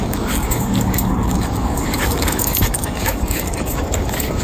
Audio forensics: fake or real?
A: fake